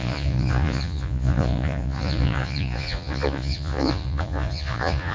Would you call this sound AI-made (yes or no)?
yes